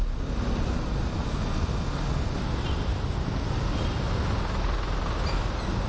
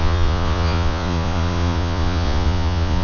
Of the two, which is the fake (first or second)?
second